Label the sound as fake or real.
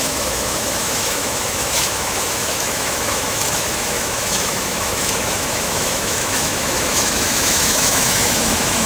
fake